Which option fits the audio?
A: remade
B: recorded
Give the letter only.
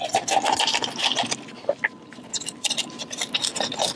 B